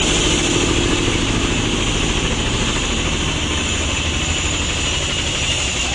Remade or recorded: recorded